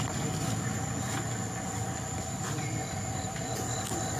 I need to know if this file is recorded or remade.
recorded